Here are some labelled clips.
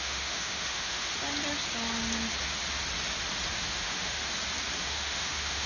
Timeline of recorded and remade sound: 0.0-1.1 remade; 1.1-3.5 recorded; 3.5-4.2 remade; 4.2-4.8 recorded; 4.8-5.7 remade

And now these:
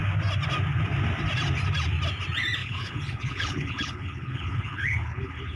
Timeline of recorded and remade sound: 0.0-2.6 recorded; 2.6-5.6 remade

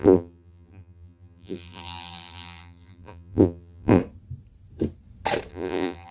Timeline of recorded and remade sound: 0.0-4.0 remade; 4.0-5.5 recorded; 5.5-6.1 remade